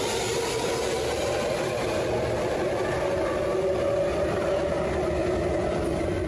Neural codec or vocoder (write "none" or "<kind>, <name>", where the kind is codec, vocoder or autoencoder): none